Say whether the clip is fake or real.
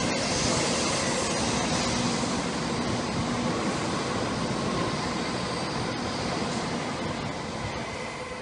real